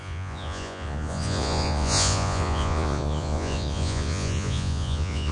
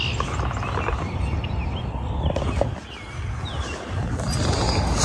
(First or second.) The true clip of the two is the second